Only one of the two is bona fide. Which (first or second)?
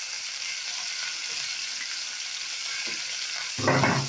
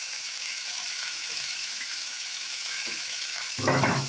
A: first